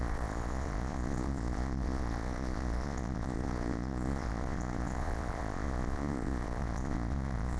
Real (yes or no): no